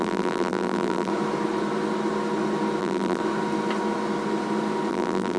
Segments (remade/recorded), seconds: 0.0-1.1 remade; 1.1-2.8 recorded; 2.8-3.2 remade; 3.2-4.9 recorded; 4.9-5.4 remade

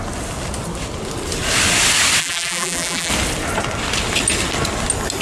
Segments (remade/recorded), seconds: 0.0-2.2 recorded; 2.2-3.1 remade; 3.1-5.2 recorded

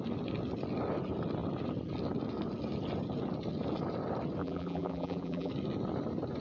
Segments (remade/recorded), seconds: 0.0-4.4 recorded; 4.4-5.5 remade; 5.5-6.4 recorded

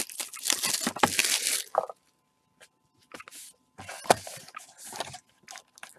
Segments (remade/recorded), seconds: 0.0-1.2 recorded; 1.2-2.2 remade; 2.2-3.3 recorded; 3.3-4.3 remade; 4.3-6.0 recorded

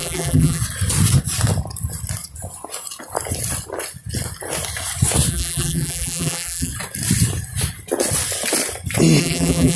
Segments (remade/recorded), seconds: 0.0-0.6 remade; 0.6-5.3 recorded; 5.3-6.7 remade; 6.7-9.2 recorded; 9.2-9.8 remade

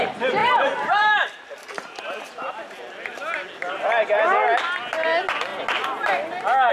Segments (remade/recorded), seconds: 0.0-0.4 recorded; 0.4-2.2 remade; 2.2-6.7 recorded

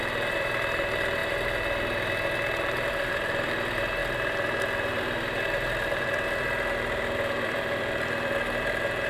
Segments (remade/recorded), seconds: 0.0-1.2 remade; 1.2-2.9 recorded; 2.9-9.1 remade